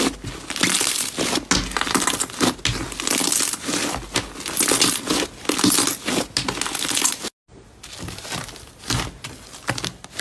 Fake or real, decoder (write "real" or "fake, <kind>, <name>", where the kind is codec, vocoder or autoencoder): real